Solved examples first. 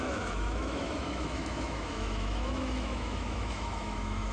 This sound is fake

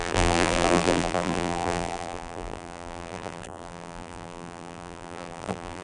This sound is fake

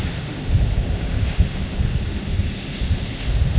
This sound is fake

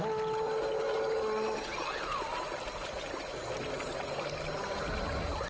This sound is real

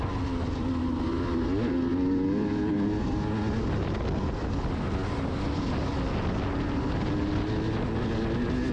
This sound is real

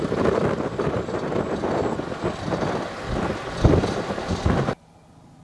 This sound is real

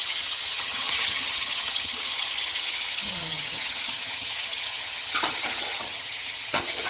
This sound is fake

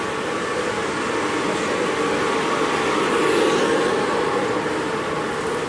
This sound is real